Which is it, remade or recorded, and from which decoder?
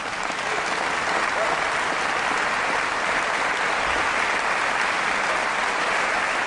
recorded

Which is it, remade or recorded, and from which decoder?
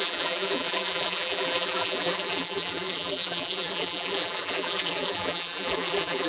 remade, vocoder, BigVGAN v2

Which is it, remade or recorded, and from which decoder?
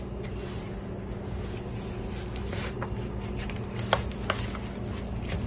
recorded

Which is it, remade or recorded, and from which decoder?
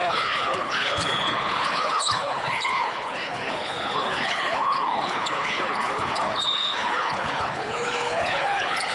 remade, codec, HILCodec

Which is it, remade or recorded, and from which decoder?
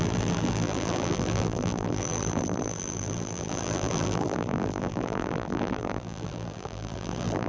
remade, vocoder, BigVGAN v2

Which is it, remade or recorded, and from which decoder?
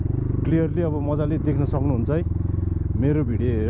recorded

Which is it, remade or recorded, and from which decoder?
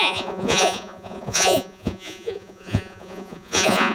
remade, vocoder, Vocos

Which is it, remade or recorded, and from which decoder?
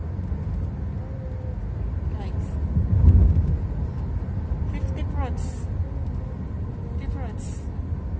recorded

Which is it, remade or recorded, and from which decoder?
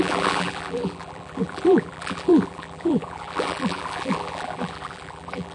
remade, vocoder, BigVGAN v2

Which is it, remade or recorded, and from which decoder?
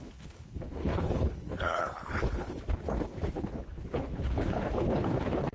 remade, codec, HILCodec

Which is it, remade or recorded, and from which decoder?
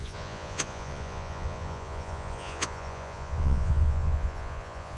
remade, vocoder, Vocos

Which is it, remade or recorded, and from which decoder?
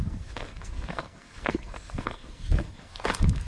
remade, codec, SNAC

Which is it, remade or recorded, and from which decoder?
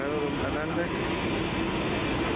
recorded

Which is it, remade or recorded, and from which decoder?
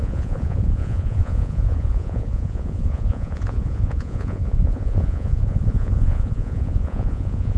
remade, vocoder, Vocos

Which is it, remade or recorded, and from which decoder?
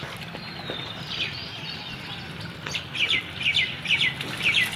recorded